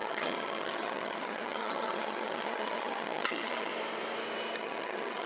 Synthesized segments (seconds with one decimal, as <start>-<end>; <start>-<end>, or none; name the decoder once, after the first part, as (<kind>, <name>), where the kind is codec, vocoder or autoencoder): 0.0-3.7 (vocoder, HiFi-GAN); 4.6-5.3